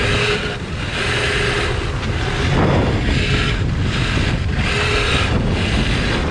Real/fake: real